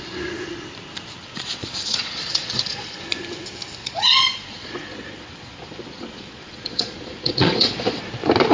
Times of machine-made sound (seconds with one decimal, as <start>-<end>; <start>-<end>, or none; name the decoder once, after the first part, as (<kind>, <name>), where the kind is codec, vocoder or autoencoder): 1.2-3.0 (vocoder, Vocos); 3.8-8.0